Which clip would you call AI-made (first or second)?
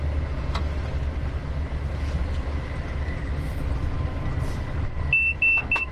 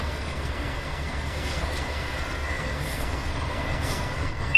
second